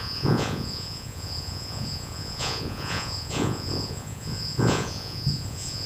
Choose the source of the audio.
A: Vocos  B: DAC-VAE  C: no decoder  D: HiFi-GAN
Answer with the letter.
A